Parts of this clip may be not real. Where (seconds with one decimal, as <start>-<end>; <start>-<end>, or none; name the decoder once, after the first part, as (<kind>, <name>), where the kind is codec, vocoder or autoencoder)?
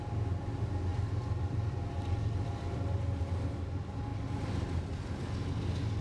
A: 0.9-3.2 (vocoder, BigVGAN v2); 4.1-4.8